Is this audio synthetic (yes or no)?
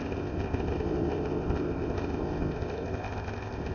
yes